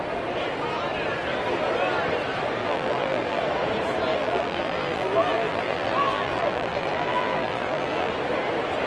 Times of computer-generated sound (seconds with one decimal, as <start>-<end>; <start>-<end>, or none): 2.6-3.4; 4.1-8.1